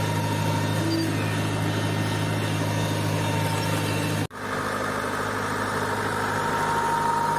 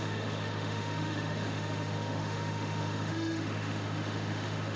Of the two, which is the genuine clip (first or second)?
first